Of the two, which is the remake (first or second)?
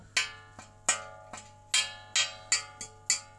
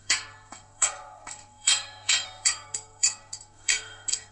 second